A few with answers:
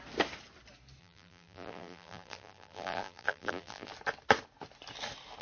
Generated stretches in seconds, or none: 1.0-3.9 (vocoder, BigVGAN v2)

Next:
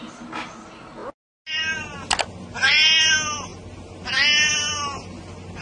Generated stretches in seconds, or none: none

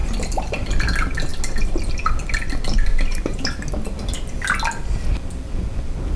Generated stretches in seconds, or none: 0.0-0.7 (vocoder, BigVGAN v2); 2.9-3.4

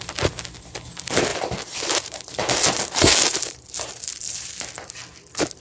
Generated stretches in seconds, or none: 1.3-4.7 (vocoder, BigVGAN v2)